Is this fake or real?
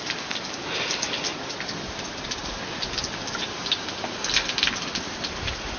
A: real